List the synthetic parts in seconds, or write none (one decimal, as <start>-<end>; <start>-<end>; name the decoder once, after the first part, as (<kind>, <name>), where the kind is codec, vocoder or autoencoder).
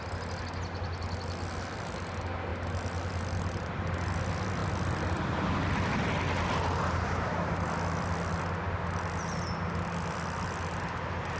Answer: none